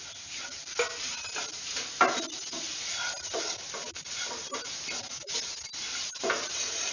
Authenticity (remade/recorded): recorded